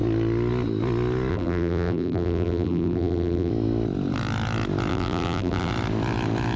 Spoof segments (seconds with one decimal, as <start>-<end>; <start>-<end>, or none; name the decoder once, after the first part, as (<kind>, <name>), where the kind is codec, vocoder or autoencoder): 1.3-3.5 (vocoder, BigVGAN v2); 4.9-5.7

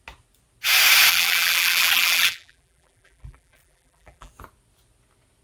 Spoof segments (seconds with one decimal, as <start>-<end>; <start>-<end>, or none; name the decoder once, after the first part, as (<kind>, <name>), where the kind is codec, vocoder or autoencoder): 1.1-4.3 (vocoder, BigVGAN v2)

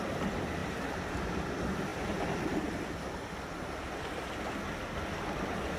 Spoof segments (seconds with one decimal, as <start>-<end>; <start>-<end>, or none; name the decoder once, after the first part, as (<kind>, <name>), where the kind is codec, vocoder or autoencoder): 0.6-1.3 (vocoder, BigVGAN v2)

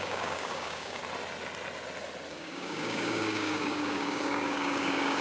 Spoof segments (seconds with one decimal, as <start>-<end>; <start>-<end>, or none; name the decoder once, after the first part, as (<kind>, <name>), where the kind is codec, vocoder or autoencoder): 0.0-1.0 (codec, DAC); 2.3-5.2

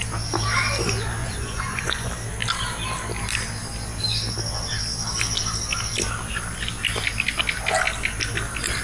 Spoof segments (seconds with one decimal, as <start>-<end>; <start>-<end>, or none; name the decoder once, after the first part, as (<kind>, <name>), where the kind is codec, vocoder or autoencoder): 1.2-2.1 (vocoder, Vocos)